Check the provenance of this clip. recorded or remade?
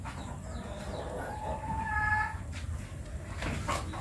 recorded